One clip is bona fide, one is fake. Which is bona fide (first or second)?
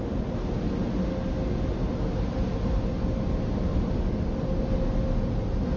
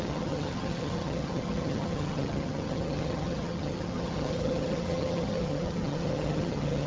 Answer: first